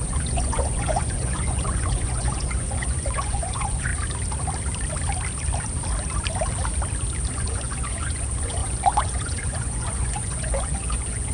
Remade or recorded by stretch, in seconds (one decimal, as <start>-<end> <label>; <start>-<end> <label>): 0.0-3.9 remade; 3.9-7.3 recorded; 7.3-11.3 remade